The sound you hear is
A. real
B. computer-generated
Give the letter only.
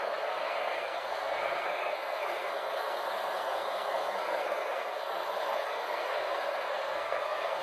B